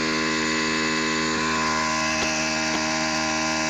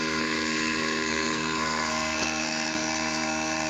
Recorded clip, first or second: first